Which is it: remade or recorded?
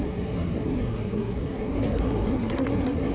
remade